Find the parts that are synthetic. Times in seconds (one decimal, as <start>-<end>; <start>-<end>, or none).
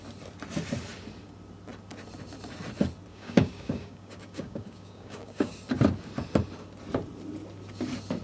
3.1-5.5